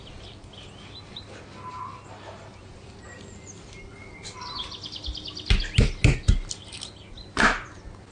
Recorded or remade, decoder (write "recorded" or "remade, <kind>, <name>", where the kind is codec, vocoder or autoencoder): recorded